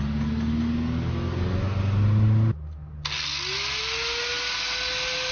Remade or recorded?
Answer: recorded